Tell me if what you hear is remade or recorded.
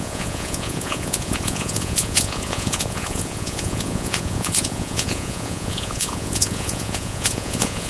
remade